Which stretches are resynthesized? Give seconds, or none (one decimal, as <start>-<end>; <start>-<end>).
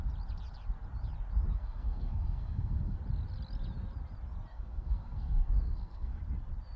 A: 1.5-3.0; 4.5-6.2